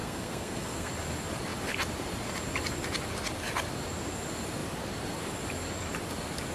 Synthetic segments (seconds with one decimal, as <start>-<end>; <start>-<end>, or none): 0.0-0.9